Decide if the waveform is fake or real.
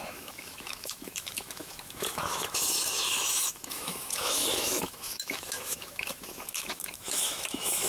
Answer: fake